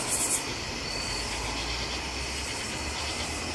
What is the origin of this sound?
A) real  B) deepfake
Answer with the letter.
A